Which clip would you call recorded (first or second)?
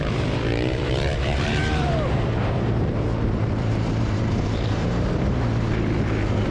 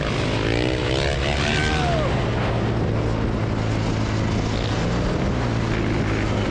second